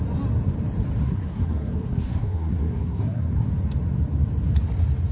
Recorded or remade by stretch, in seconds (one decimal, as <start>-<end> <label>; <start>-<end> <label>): 0.0-1.0 recorded; 1.0-3.5 remade; 3.5-5.1 recorded